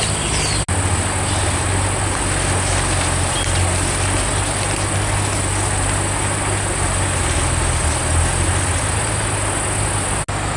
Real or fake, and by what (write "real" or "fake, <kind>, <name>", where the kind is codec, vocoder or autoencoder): real